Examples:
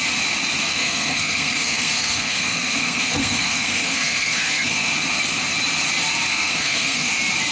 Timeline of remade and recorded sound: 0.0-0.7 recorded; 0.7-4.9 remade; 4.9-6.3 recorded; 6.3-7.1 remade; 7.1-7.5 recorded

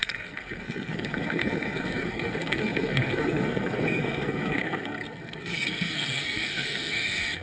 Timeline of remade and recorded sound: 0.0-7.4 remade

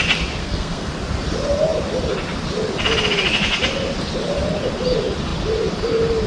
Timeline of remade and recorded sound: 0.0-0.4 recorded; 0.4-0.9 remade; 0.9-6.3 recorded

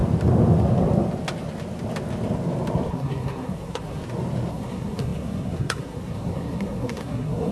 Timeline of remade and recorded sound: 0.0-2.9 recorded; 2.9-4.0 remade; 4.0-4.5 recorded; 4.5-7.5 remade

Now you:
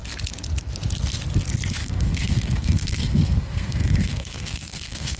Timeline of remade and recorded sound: 0.0-1.8 recorded; 1.8-5.2 remade

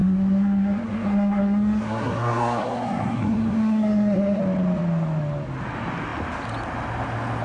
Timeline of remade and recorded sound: 0.0-4.4 remade; 4.4-7.4 recorded